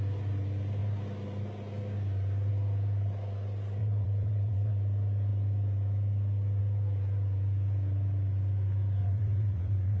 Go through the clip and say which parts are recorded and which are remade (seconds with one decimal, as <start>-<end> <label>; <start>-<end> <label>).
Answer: 0.0-3.8 recorded; 3.8-4.7 remade; 4.7-9.0 recorded; 9.0-10.0 remade